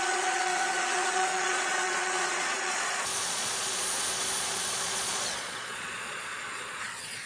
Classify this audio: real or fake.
fake